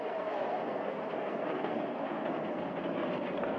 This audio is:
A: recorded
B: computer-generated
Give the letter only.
B